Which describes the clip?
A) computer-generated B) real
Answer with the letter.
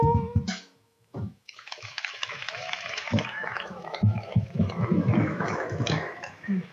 A